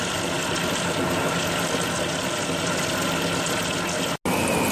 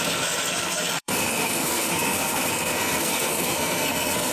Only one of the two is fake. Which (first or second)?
second